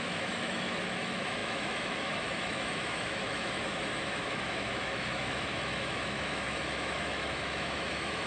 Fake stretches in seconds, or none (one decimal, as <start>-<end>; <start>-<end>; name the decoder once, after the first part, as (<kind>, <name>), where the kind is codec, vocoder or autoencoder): 0.0-8.3 (autoencoder, DAC-VAE)